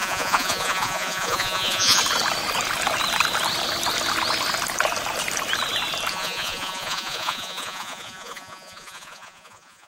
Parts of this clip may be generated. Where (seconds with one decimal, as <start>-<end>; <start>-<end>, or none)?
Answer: 0.0-2.0; 6.1-9.9